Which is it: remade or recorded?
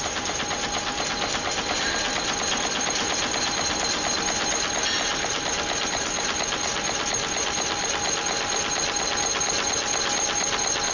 recorded